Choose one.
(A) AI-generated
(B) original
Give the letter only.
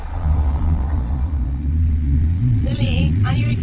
A